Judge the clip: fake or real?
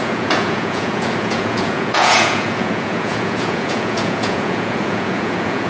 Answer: fake